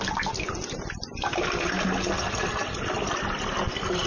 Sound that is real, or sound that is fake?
real